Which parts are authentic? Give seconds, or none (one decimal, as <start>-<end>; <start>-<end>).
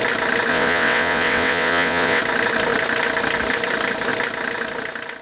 0.0-0.5; 2.2-5.2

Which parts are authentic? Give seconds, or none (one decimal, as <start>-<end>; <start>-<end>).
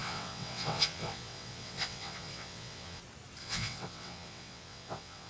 3.0-3.4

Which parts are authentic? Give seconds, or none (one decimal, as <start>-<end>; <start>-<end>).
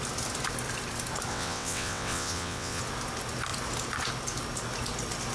0.0-1.3; 2.8-5.3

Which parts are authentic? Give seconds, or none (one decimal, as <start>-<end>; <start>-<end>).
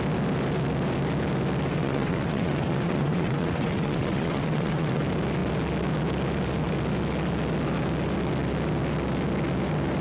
0.0-1.7; 5.0-10.0